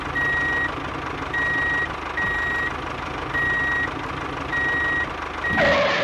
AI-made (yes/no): no